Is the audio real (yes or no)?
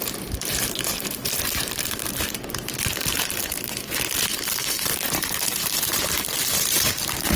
no